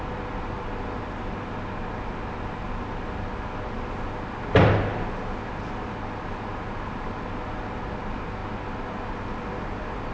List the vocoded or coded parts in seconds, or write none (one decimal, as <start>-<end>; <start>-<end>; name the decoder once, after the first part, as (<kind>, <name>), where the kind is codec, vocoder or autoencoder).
none

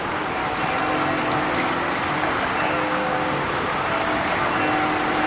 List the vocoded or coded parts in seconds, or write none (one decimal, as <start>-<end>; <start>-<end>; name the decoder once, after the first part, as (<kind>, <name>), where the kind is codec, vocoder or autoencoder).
0.0-0.4 (codec, DAC); 2.6-3.7

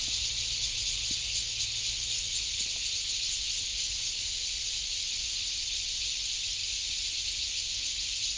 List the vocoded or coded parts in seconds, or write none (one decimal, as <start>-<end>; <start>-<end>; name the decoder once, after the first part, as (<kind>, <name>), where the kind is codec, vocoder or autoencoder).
3.7-4.3 (codec, DAC)

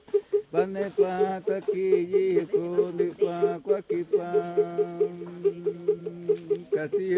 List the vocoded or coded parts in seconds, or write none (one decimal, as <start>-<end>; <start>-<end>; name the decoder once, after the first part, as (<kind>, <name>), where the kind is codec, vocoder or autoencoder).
none